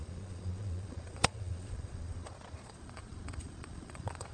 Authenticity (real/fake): fake